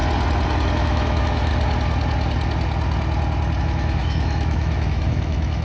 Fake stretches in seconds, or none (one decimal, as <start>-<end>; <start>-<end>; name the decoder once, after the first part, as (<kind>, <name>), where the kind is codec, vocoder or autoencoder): 0.7-1.5 (autoencoder, DAC-VAE); 3.6-5.6